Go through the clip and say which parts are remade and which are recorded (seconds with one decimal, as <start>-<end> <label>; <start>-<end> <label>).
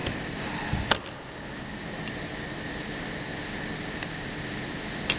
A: 0.0-5.2 recorded